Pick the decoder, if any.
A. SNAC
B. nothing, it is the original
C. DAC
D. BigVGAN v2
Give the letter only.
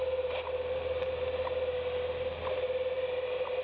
B